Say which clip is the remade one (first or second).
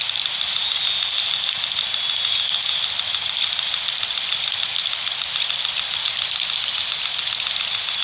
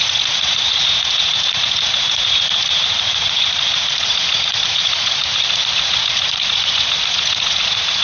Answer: second